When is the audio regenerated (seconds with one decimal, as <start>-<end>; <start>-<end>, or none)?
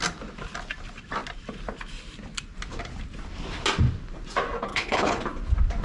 4.7-5.2